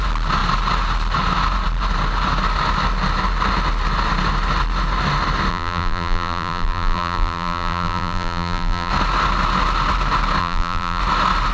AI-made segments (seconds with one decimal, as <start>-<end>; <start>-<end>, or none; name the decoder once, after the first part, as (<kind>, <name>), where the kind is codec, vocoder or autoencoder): 5.5-8.9 (vocoder, BigVGAN v2); 10.4-11.0